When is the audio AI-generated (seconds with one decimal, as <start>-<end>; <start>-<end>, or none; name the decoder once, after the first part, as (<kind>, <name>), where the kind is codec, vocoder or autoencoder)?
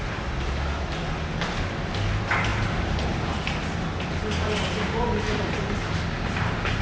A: none